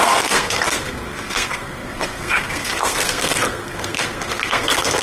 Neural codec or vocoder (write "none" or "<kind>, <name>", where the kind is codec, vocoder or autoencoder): codec, SNAC